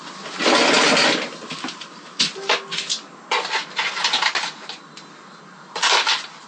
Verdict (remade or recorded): recorded